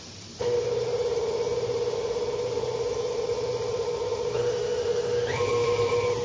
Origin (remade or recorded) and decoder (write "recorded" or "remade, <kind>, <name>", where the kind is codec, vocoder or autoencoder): remade, vocoder, BigVGAN v2